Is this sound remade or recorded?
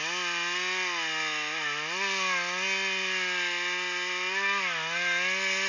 recorded